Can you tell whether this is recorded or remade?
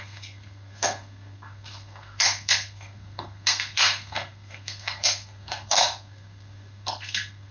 remade